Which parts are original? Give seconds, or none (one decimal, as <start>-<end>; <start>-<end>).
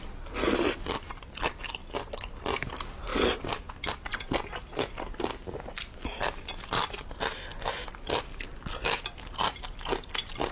0.0-10.5